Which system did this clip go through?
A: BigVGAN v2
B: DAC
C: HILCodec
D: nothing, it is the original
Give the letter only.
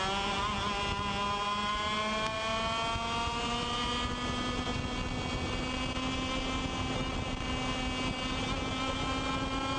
D